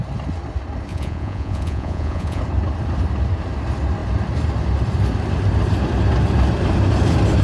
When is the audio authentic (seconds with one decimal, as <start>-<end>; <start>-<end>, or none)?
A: 0.0-0.9; 2.4-7.4